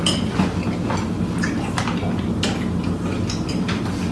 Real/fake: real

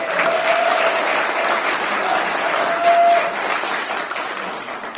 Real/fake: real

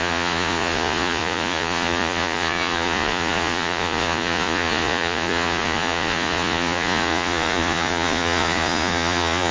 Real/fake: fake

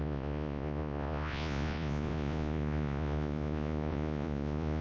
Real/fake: fake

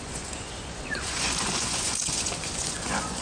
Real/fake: fake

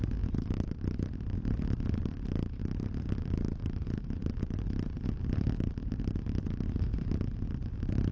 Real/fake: real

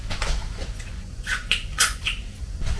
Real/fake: fake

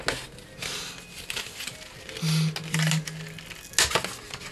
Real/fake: real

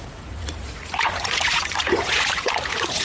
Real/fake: fake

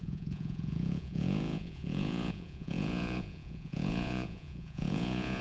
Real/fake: fake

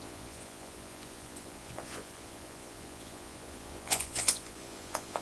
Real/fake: fake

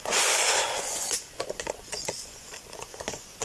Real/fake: fake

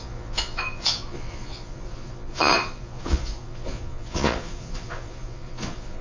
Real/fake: fake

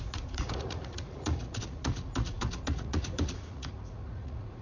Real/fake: fake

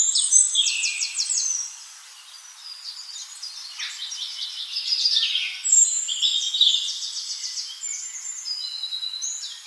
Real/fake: real